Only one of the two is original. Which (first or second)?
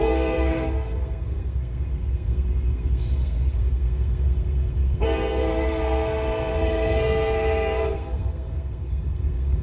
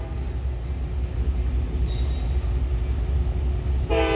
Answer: second